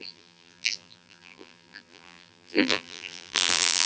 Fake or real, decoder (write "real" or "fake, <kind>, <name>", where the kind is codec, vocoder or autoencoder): fake, vocoder, BigVGAN v2